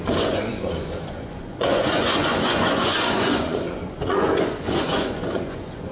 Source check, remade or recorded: remade